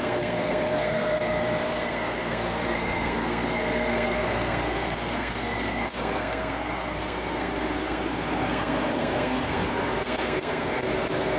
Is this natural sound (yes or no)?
no